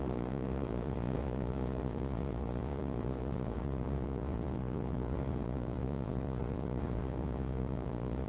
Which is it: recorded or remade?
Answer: remade